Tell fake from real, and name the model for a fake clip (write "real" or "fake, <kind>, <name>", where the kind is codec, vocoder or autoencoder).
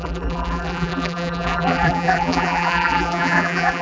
fake, vocoder, BigVGAN v2